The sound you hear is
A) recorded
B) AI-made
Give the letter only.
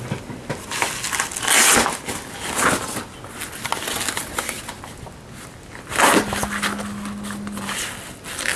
A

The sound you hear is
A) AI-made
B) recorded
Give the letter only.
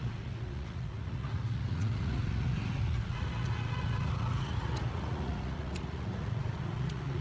A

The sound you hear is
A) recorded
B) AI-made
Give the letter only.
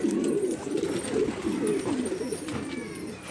A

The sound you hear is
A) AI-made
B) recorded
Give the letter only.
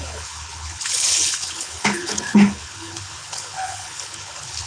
A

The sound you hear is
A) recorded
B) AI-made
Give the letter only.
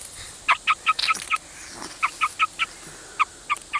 A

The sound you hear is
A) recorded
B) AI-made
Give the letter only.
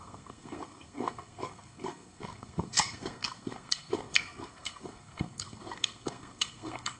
B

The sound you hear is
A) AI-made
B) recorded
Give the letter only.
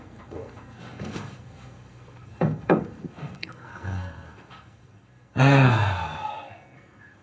A